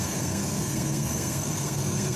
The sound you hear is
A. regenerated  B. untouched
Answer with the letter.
A